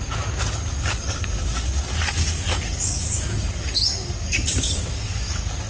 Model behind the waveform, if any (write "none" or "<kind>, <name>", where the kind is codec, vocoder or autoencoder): codec, DAC